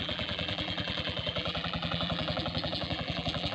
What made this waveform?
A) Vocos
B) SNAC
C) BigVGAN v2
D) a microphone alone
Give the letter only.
C